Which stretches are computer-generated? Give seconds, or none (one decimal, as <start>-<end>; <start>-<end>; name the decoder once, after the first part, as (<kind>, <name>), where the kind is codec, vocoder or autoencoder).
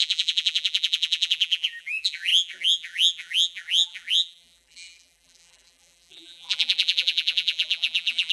0.0-8.3 (vocoder, BigVGAN v2)